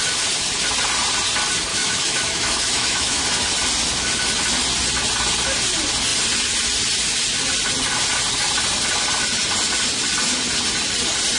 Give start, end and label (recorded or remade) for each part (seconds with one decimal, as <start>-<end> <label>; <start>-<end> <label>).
0.0-1.7 recorded; 1.7-3.2 remade; 3.2-11.4 recorded